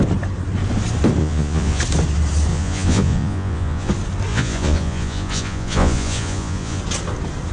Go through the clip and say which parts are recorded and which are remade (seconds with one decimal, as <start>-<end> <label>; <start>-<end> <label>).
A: 0.0-1.2 recorded; 1.2-1.8 remade; 1.8-2.5 recorded; 2.5-3.9 remade; 3.9-4.3 recorded; 4.3-6.8 remade; 6.8-7.5 recorded